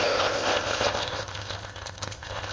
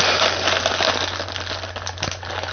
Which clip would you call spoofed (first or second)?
first